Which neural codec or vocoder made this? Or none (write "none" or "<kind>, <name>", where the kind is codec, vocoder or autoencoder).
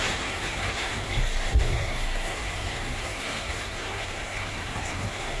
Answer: codec, SNAC